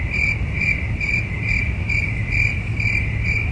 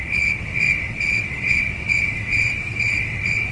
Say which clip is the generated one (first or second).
second